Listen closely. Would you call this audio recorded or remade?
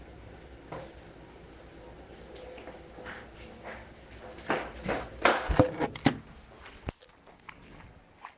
recorded